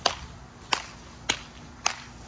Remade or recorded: recorded